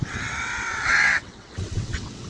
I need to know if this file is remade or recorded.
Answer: remade